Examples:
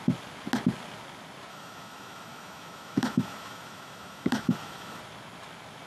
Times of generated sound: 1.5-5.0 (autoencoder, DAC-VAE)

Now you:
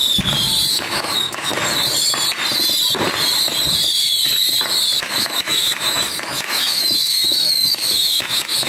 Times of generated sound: 0.7-1.5 (autoencoder, DAC-VAE); 5.0-8.7

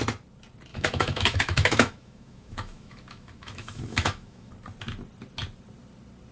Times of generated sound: 0.7-4.5 (autoencoder, DAC-VAE)

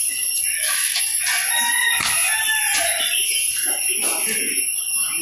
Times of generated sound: 0.5-1.0 (autoencoder, DAC-VAE)

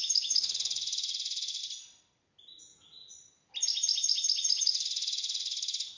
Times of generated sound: 0.0-1.6 (autoencoder, DAC-VAE); 2.6-3.0; 4.6-6.0

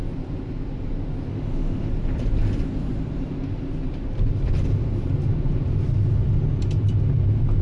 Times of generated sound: 1.3-1.9 (autoencoder, DAC-VAE)

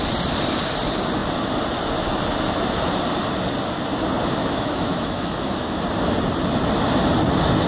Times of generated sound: 4.4-5.8 (autoencoder, DAC-VAE)